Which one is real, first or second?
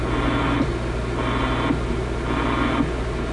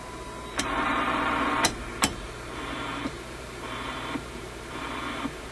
first